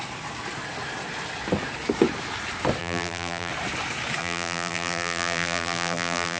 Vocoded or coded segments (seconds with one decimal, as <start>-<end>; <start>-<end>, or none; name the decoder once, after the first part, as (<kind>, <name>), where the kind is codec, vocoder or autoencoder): 2.8-3.5 (vocoder, BigVGAN v2); 4.2-6.4